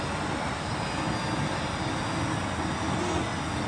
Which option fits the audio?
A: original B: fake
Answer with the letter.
A